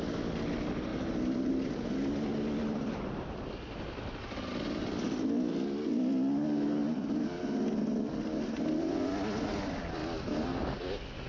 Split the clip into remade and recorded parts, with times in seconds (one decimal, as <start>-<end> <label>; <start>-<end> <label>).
0.0-11.3 recorded

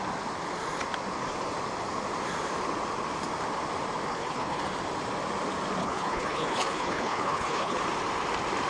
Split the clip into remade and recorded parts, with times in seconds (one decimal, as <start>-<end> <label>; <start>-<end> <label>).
0.0-4.1 recorded; 4.1-4.6 remade; 4.6-5.8 recorded; 5.8-7.8 remade; 7.8-8.7 recorded

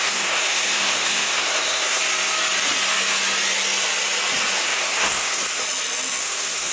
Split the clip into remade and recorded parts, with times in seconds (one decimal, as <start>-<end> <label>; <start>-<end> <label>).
0.0-2.0 remade; 2.0-4.6 recorded; 4.6-5.6 remade; 5.6-6.2 recorded; 6.2-6.7 remade